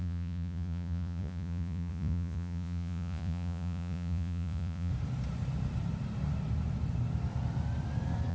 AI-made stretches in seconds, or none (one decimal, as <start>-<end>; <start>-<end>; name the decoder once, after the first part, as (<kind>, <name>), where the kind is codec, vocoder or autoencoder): 0.0-4.9 (vocoder, Vocos)